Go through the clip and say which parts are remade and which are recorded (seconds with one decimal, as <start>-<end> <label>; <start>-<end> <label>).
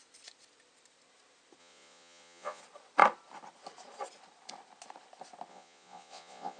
0.0-1.6 recorded; 1.6-2.6 remade; 2.6-5.5 recorded; 5.5-6.6 remade